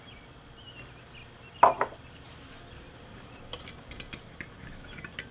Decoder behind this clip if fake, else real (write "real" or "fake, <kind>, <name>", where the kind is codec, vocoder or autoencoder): real